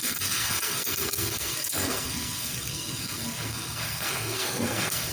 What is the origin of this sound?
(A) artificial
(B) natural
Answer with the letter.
A